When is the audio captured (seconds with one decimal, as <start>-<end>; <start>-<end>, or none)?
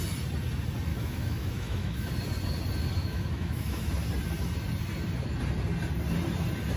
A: 0.0-0.9; 2.1-3.0; 3.9-6.8